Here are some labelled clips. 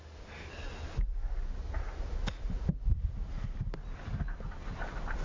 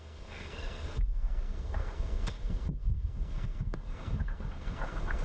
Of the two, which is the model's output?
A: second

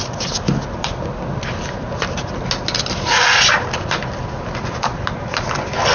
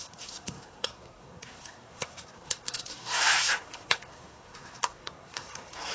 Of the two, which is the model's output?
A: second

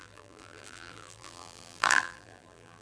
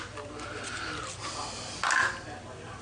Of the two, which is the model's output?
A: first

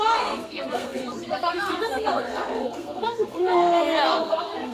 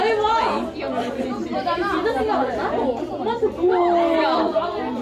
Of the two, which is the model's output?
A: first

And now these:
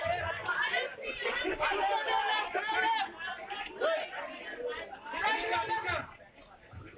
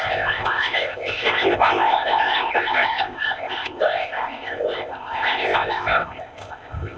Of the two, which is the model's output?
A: second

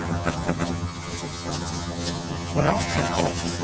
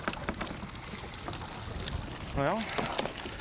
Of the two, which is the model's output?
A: first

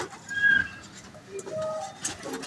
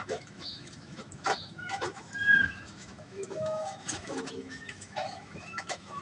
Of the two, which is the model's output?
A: second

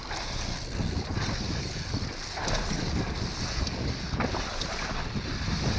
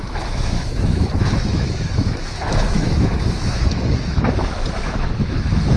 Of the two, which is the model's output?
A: second